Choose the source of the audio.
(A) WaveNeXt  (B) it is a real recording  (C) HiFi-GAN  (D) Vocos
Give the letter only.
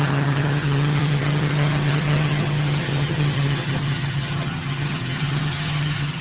C